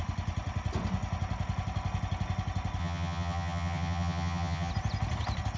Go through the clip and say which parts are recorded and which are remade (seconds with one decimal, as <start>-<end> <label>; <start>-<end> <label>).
0.0-2.8 recorded; 2.8-4.7 remade; 4.7-5.6 recorded

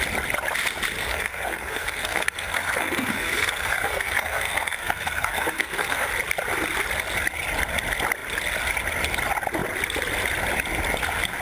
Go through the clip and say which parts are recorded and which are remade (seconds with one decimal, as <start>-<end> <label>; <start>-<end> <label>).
0.0-1.0 recorded; 1.0-6.1 remade; 6.1-11.4 recorded

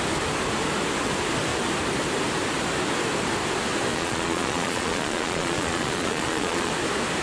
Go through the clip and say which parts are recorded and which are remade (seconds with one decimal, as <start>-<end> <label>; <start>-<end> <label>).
0.0-3.9 recorded; 3.9-6.7 remade; 6.7-7.2 recorded

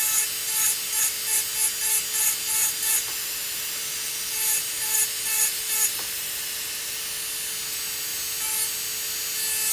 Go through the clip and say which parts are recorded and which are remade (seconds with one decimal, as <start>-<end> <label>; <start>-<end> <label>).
0.0-2.6 recorded; 2.6-7.0 remade; 7.0-9.7 recorded

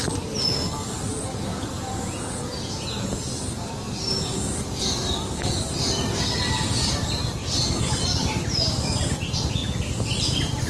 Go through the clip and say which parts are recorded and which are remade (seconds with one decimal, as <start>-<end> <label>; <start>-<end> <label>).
0.0-1.5 recorded; 1.5-3.3 remade; 3.3-10.7 recorded

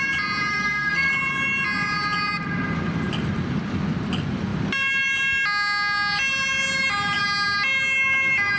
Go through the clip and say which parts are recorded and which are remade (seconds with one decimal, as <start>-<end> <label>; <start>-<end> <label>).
0.0-0.5 recorded; 0.5-1.1 remade; 1.1-8.6 recorded